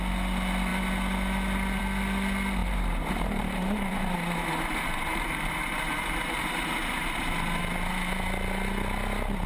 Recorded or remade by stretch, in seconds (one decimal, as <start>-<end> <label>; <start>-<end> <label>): 0.0-2.6 recorded; 2.6-7.6 remade; 7.6-9.5 recorded